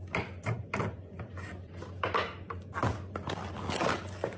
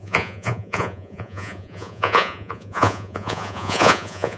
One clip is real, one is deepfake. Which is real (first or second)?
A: first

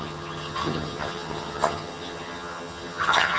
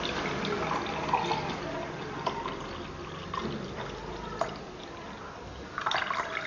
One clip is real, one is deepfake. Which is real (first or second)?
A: second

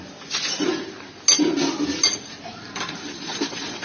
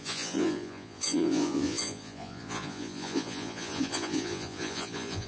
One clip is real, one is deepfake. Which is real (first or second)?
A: first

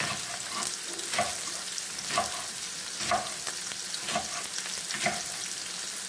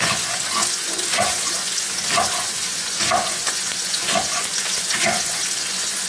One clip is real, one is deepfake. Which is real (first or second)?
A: first